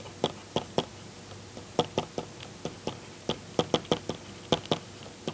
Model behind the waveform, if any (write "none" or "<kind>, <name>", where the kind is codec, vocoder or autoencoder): none